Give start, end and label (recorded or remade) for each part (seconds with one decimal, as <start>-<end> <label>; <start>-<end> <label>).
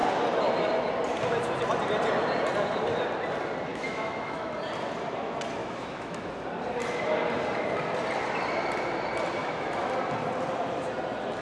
0.0-3.7 recorded; 3.7-4.5 remade; 4.5-5.6 recorded; 5.6-6.3 remade; 6.3-9.4 recorded; 9.4-9.9 remade; 9.9-11.4 recorded